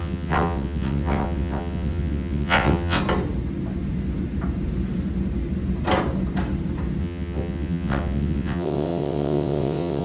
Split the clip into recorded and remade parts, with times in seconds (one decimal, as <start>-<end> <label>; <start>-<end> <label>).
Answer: 0.0-3.0 remade; 3.0-7.0 recorded; 7.0-10.0 remade